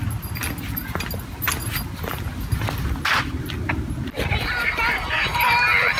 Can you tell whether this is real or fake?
real